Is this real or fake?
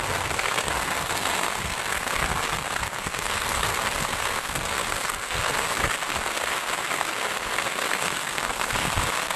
fake